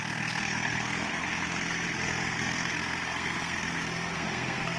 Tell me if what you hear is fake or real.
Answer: fake